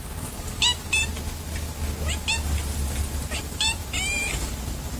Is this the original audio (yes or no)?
yes